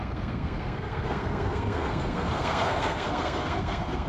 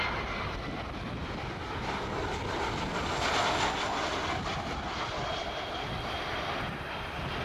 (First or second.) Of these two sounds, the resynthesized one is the first